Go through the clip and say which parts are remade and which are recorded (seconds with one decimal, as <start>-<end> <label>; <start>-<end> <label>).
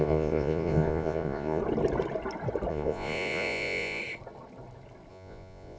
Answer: 0.0-1.6 remade; 1.6-2.7 recorded; 2.7-4.0 remade; 4.0-5.1 recorded; 5.1-5.8 remade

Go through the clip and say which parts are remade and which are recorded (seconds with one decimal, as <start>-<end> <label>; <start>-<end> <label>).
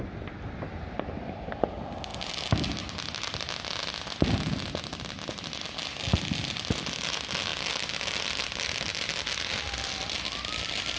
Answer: 0.0-11.0 recorded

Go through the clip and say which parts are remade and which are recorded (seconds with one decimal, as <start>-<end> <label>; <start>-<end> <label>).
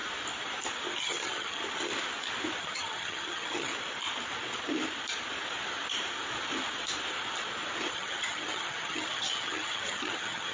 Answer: 0.0-1.0 recorded; 1.0-1.6 remade; 1.6-2.6 recorded; 2.6-3.7 remade; 3.7-7.9 recorded; 7.9-10.5 remade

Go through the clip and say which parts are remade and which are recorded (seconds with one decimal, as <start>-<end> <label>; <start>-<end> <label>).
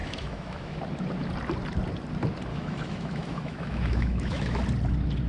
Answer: 0.0-0.8 remade; 0.8-2.5 recorded; 2.5-4.6 remade; 4.6-5.3 recorded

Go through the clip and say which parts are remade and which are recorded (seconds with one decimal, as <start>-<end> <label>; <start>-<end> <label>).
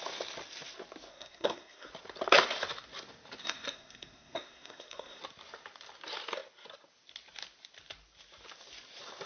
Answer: 0.0-1.1 recorded; 1.1-1.9 remade; 1.9-3.4 recorded; 3.4-5.2 remade; 5.2-9.3 recorded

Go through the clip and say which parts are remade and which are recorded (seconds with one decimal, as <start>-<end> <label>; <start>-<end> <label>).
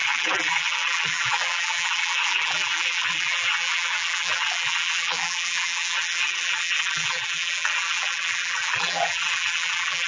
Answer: 0.0-10.1 remade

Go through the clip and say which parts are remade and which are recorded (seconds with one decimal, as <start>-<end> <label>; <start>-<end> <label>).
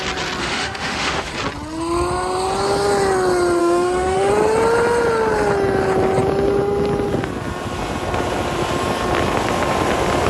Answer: 0.0-0.4 recorded; 0.4-1.3 remade; 1.3-3.6 recorded; 3.6-4.3 remade; 4.3-10.3 recorded